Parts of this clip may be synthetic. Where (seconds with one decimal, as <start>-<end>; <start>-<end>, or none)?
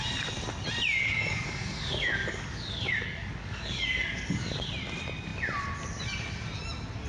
1.0-4.7